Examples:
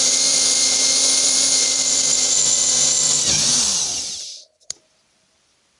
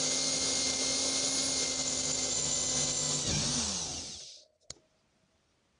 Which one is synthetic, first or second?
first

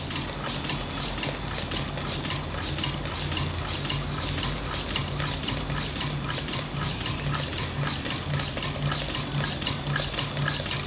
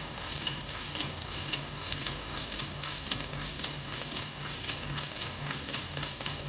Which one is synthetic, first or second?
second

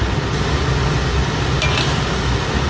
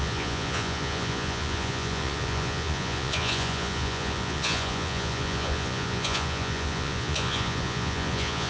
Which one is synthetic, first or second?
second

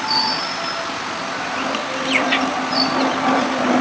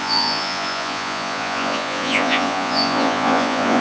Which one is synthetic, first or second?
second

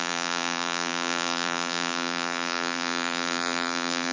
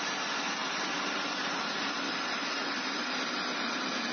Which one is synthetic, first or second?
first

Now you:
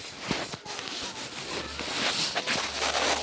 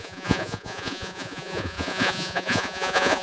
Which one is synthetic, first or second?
second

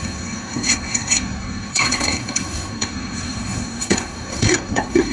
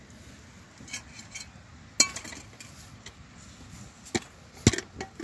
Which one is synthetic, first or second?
first